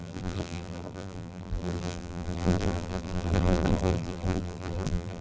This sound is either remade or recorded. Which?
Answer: remade